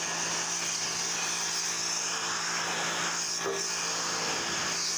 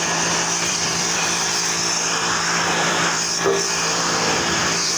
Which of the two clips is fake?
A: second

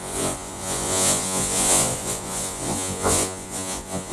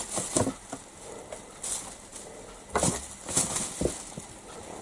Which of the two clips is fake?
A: first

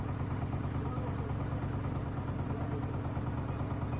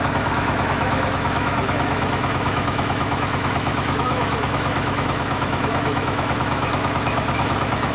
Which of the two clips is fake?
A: second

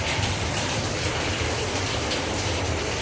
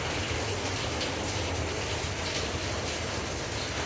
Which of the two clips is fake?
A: first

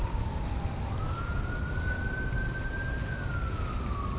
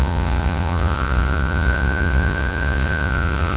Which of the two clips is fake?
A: second